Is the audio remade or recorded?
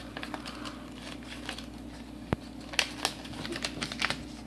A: recorded